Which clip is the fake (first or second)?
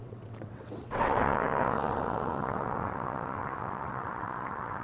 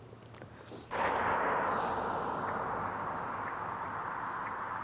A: first